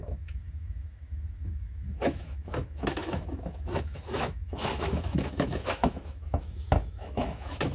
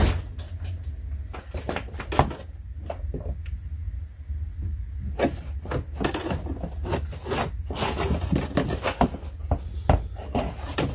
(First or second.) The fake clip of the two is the first